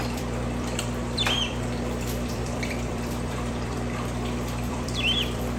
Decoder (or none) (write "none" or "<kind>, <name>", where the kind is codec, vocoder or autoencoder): vocoder, BigVGAN v2